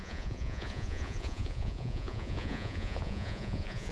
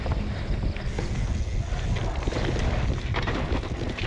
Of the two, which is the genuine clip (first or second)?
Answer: second